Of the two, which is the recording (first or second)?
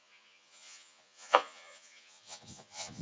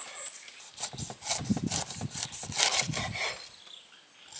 second